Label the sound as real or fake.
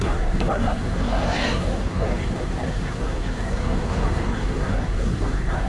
fake